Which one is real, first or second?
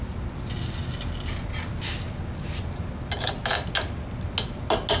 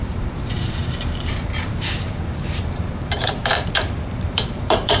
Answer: first